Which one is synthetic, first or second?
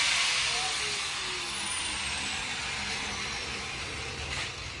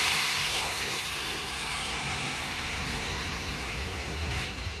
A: second